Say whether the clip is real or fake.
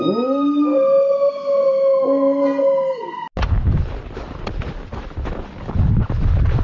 real